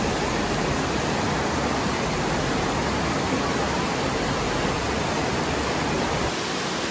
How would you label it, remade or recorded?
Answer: recorded